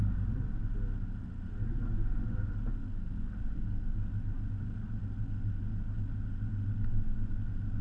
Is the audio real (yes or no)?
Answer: yes